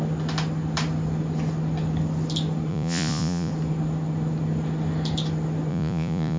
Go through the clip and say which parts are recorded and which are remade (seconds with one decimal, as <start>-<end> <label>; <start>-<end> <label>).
0.0-2.7 recorded; 2.7-3.5 remade; 3.5-5.7 recorded; 5.7-6.4 remade